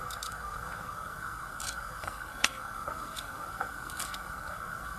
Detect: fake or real fake